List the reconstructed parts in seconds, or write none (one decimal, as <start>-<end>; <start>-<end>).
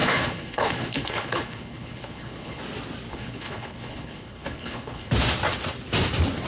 0.0-2.6; 3.1-5.1